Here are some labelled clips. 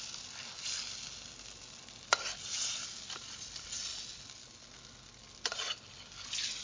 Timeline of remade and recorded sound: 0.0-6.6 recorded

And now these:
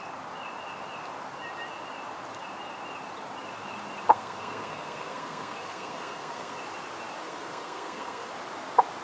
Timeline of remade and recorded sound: 0.0-4.1 recorded; 4.1-6.6 remade; 6.6-7.2 recorded; 7.2-8.3 remade; 8.3-9.0 recorded

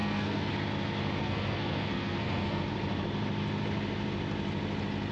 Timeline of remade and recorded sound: 0.0-0.5 remade; 0.5-1.2 recorded; 1.2-2.6 remade; 2.6-5.1 recorded